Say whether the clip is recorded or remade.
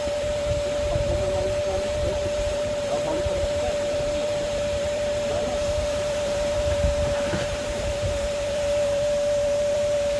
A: remade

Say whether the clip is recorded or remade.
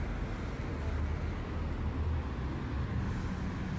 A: recorded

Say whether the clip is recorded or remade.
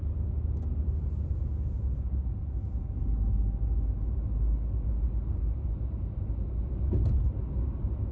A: recorded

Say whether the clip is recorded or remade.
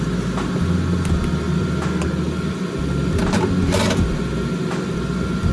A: recorded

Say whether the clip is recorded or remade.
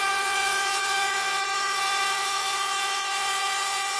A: remade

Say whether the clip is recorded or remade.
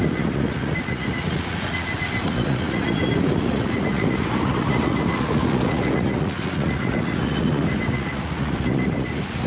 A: remade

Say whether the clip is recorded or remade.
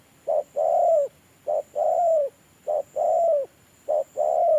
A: remade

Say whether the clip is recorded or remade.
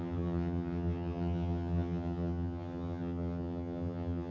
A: remade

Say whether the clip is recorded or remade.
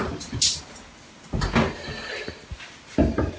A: recorded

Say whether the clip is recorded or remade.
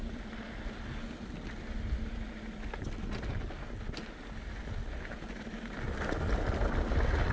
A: recorded